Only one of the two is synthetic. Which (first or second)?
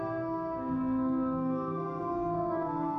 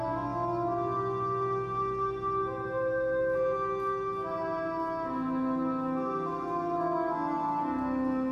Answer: first